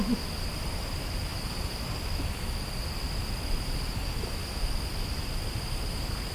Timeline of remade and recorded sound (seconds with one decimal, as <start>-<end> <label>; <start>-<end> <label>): 0.0-6.3 recorded